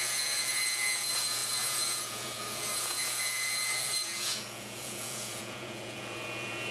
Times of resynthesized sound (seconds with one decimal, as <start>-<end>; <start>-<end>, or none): 0.0-6.7